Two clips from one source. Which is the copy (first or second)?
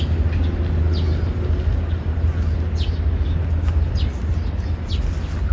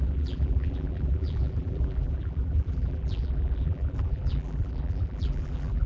second